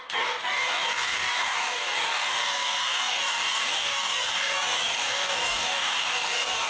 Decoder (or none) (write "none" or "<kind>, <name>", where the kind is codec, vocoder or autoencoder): codec, DAC